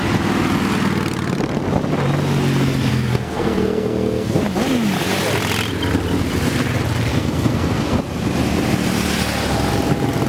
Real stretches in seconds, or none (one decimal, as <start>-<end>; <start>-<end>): 0.0-2.9; 4.4-7.1; 8.0-10.3

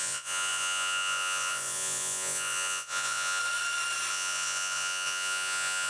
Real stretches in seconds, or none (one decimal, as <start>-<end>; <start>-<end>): 3.4-4.1

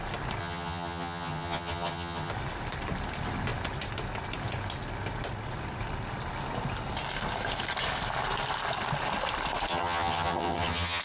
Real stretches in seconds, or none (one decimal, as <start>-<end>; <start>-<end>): 0.0-0.4; 2.3-9.7

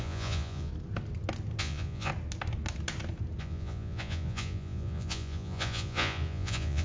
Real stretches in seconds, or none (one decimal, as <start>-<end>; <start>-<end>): 0.7-1.6; 2.1-3.4